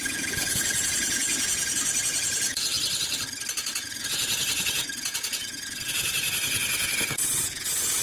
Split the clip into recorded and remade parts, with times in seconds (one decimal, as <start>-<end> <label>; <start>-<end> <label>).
0.0-2.7 remade; 2.7-3.5 recorded; 3.5-8.0 remade